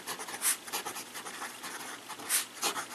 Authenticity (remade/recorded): recorded